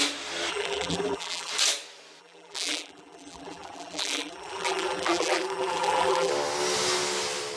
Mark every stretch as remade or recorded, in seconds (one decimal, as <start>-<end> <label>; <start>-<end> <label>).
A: 0.0-0.5 recorded; 0.5-1.5 remade; 1.5-2.2 recorded; 2.2-6.3 remade; 6.3-7.6 recorded